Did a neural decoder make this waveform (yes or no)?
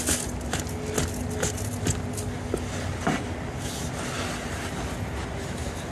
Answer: no